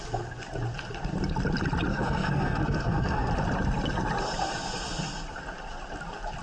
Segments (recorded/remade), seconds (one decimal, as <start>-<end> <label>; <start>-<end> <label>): 0.0-1.9 recorded; 1.9-3.3 remade; 3.3-6.4 recorded